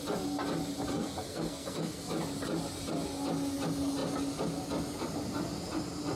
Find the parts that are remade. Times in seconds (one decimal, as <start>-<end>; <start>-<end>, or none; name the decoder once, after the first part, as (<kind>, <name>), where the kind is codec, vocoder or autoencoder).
0.9-2.1 (codec, SNAC)